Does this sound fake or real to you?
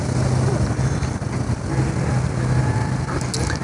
real